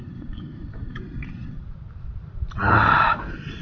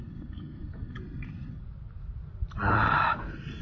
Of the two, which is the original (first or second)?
second